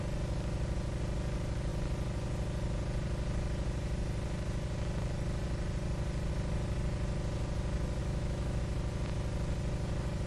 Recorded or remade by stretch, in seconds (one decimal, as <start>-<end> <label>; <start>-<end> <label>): 0.0-8.0 recorded; 8.0-8.6 remade; 8.6-10.3 recorded